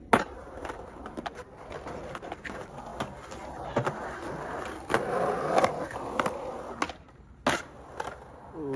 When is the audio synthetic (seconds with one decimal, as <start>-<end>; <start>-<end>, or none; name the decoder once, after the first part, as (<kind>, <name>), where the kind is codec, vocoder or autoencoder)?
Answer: none